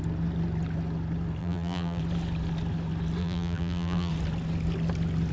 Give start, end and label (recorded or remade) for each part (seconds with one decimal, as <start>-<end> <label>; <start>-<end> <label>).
0.0-1.4 recorded; 1.4-2.0 remade; 2.0-3.2 recorded; 3.2-4.1 remade; 4.1-5.3 recorded